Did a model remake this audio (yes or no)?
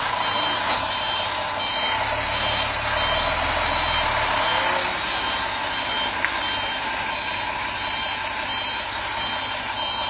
no